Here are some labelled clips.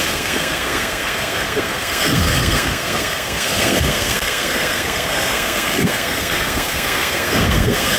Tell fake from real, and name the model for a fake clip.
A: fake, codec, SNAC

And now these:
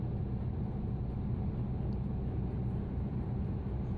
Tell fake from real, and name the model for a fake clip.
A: real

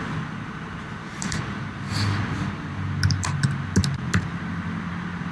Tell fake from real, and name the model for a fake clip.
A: real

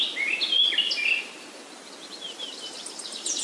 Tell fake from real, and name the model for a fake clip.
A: real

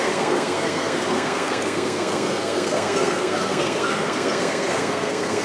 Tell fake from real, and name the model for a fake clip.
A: fake, codec, SNAC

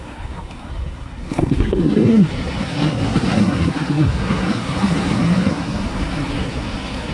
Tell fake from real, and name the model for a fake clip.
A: fake, codec, SNAC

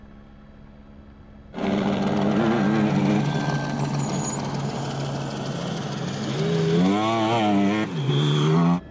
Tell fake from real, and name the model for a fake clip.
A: real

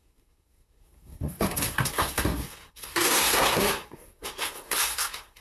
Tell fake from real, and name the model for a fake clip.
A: fake, codec, SNAC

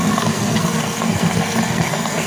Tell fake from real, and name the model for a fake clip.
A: fake, codec, SNAC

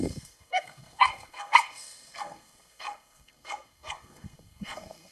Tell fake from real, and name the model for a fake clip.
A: fake, codec, SNAC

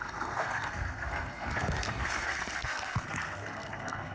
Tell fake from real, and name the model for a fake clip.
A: fake, codec, SNAC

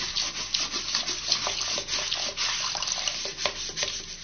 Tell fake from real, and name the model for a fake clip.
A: real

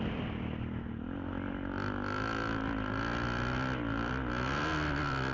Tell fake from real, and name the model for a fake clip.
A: real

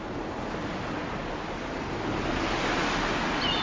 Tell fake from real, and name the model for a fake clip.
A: real